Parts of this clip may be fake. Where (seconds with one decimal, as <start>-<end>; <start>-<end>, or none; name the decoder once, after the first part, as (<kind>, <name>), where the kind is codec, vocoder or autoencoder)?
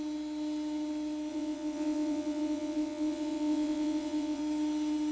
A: 1.3-4.4 (vocoder, WaveNeXt)